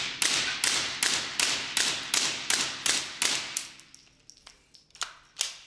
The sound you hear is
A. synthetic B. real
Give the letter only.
B